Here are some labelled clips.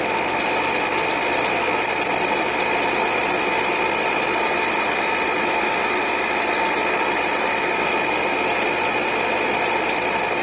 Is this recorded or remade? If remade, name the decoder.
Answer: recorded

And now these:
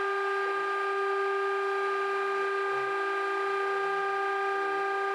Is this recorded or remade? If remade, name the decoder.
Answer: recorded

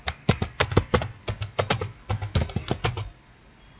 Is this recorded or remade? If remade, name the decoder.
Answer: recorded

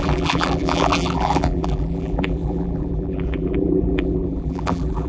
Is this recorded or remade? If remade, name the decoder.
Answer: remade, vocoder, BigVGAN v2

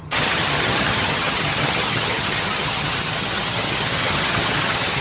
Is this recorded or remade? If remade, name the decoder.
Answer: remade, vocoder, HiFi-GAN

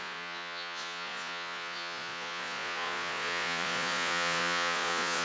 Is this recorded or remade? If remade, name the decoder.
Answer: remade, vocoder, Vocos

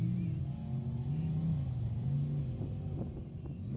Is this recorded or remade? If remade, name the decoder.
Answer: recorded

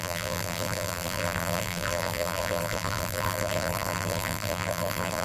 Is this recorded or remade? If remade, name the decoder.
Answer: remade, vocoder, BigVGAN v2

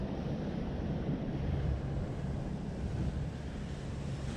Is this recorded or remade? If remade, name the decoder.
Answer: remade, vocoder, BigVGAN v2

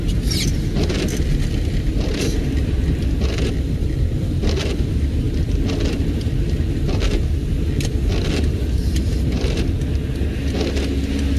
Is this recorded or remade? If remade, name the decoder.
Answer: recorded